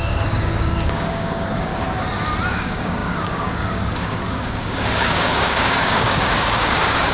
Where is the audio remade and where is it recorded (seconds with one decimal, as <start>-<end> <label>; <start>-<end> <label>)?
0.0-1.7 remade; 1.7-2.5 recorded; 2.5-7.1 remade